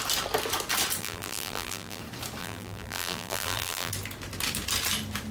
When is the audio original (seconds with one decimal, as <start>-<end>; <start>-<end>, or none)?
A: 0.0-1.0; 2.0-2.4; 3.9-5.3